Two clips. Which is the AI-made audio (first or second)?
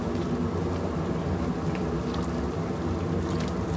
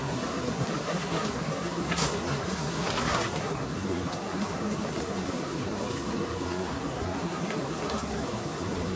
second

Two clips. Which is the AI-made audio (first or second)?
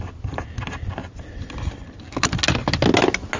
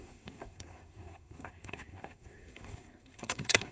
second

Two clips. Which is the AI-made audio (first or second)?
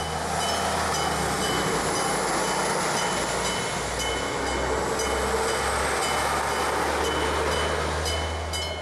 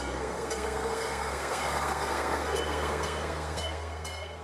second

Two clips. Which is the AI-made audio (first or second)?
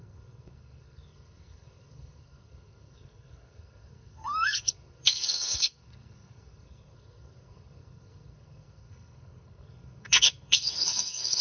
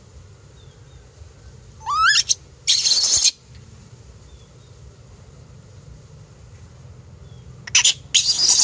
first